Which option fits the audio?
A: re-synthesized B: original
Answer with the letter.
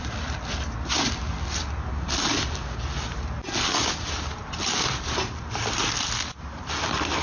B